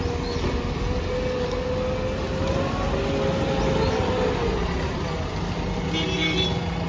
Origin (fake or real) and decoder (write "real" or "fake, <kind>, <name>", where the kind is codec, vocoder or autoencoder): real